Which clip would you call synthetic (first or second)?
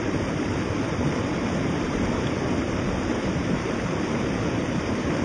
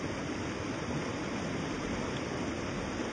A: first